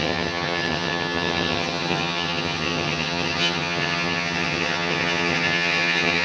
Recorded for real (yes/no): no